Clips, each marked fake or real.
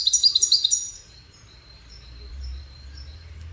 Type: fake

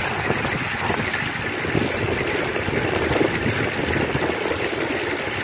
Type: real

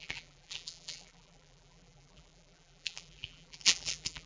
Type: fake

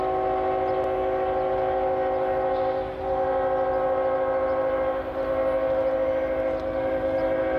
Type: real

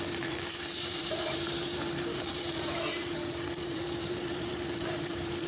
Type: fake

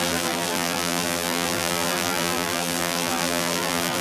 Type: fake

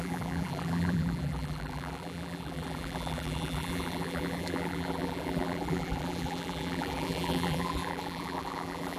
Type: fake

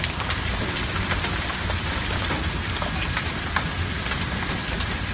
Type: fake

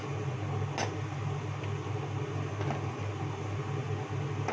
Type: real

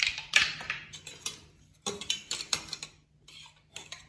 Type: fake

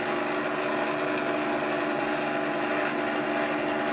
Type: real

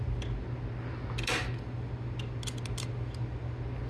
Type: real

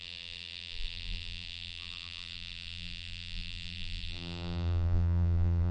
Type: fake